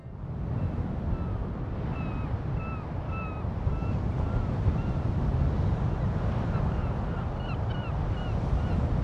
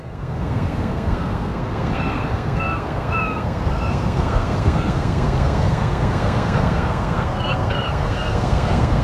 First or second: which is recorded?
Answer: first